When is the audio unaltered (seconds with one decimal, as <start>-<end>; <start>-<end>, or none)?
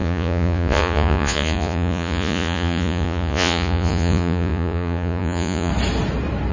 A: 5.7-6.5